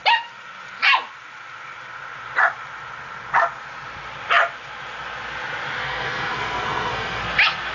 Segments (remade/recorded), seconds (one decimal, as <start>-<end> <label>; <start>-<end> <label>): 0.0-5.8 recorded; 5.8-7.2 remade; 7.2-7.7 recorded